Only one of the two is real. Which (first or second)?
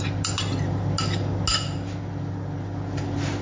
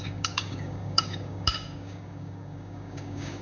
first